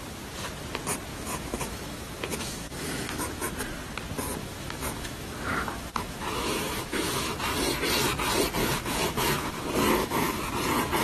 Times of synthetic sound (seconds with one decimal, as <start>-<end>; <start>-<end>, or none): 1.1-3.5; 4.4-7.5; 8.6-9.6; 10.0-10.5